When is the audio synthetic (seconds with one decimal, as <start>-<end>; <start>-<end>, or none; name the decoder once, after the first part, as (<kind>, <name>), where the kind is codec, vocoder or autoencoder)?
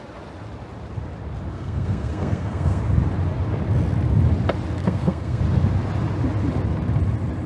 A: 1.5-2.8 (codec, SNAC); 4.8-5.4